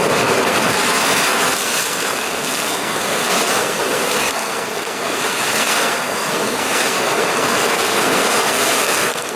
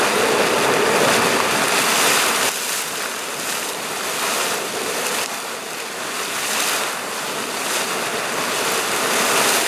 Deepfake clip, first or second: first